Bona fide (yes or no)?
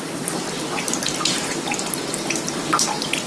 yes